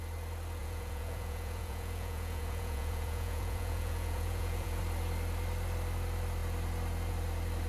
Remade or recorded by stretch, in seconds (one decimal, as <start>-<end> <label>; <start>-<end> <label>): 0.0-0.6 recorded; 0.6-4.8 remade; 4.8-7.7 recorded